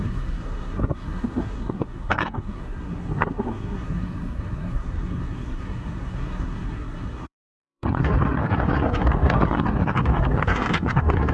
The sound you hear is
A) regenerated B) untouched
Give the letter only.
A